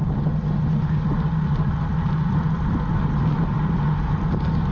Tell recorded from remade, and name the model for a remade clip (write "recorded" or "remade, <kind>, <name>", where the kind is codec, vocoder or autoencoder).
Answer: recorded